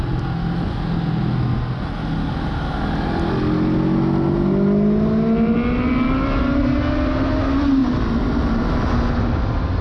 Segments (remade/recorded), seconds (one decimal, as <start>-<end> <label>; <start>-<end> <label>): 0.0-9.8 recorded

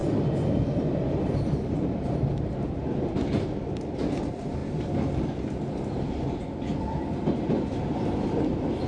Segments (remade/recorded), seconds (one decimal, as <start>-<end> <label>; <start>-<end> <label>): 0.0-4.6 remade; 4.6-7.8 recorded; 7.8-8.9 remade

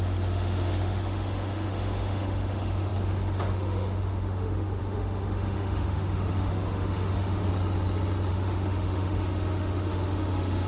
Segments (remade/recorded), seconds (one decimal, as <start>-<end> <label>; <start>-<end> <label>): 0.0-7.4 remade; 7.4-8.3 recorded; 8.3-10.7 remade

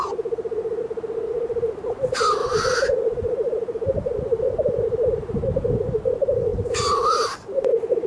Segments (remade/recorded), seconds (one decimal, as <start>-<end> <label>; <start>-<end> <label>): 0.0-2.4 recorded; 2.4-4.2 remade; 4.2-8.1 recorded

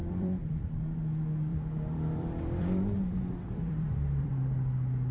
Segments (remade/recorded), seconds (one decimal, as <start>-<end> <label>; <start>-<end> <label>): 0.0-0.7 remade; 0.7-1.5 recorded; 1.5-4.3 remade; 4.3-5.1 recorded

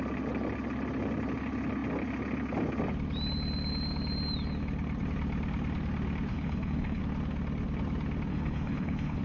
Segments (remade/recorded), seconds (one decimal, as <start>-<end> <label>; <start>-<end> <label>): 0.0-6.3 recorded; 6.3-7.0 remade; 7.0-8.3 recorded; 8.3-9.2 remade

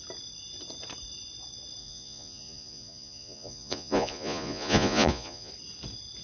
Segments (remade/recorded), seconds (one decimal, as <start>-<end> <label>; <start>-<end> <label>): 0.0-1.8 recorded; 1.8-5.5 remade; 5.5-6.2 recorded

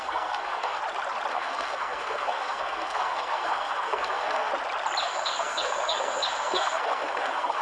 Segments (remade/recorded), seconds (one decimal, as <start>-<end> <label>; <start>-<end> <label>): 0.0-0.8 remade; 0.8-1.3 recorded; 1.3-4.5 remade; 4.5-5.0 recorded; 5.0-7.6 remade